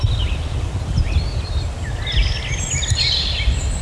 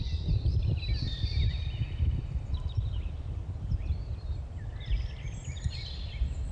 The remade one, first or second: second